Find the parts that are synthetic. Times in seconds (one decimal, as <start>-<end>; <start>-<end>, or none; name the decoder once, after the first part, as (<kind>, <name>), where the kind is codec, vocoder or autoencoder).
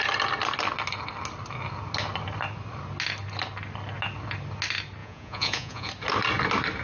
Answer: 5.0-5.9 (vocoder, Vocos)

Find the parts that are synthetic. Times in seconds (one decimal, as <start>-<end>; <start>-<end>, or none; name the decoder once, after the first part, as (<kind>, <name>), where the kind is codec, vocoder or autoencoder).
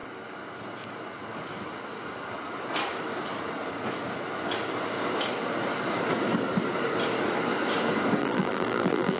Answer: 8.2-9.2 (vocoder, BigVGAN v2)